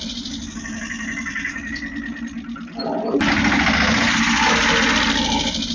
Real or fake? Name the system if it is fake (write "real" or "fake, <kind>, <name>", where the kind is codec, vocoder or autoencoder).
real